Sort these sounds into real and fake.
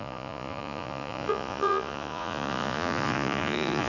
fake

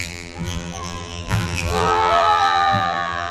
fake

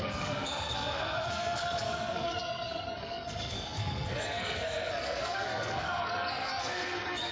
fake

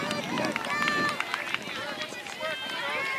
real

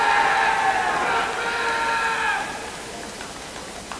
real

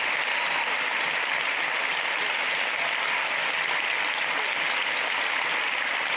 real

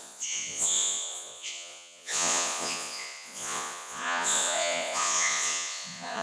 fake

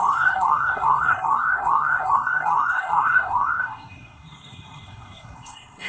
fake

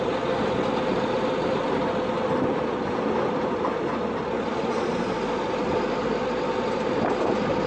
real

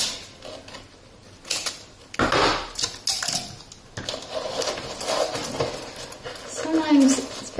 real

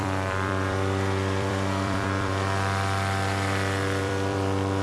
fake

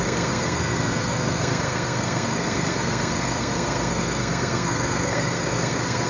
fake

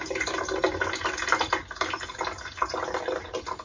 real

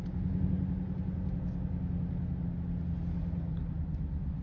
real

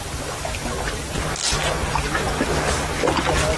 real